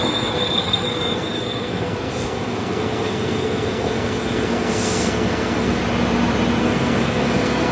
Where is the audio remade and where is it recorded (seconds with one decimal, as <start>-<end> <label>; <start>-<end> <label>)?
0.0-5.8 remade; 5.8-6.6 recorded; 6.6-7.7 remade